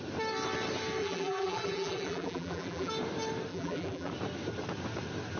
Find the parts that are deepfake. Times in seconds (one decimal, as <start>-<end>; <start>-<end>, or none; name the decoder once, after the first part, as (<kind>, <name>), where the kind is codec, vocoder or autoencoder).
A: 1.0-2.9 (vocoder, BigVGAN v2); 3.5-4.1